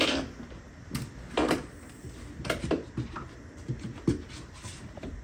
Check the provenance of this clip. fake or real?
real